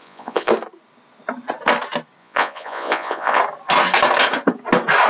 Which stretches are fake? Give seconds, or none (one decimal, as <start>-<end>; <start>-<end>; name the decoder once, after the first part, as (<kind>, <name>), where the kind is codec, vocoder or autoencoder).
0.0-0.5 (vocoder, Vocos); 2.2-3.4